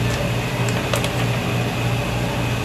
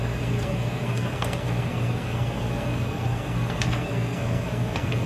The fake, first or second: second